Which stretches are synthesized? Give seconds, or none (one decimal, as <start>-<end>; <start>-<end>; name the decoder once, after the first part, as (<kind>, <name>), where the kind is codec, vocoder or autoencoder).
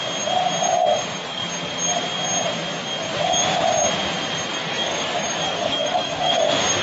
0.9-1.4 (codec, DAC); 4.5-6.3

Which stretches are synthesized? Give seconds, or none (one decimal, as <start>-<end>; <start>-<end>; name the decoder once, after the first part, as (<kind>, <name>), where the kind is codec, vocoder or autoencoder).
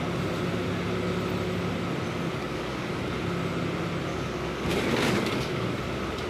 2.4-3.2 (codec, DAC); 4.1-5.8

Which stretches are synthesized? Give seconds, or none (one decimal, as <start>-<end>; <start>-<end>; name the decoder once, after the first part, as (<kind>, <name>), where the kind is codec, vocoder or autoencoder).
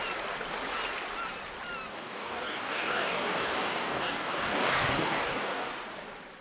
1.9-5.7 (codec, DAC)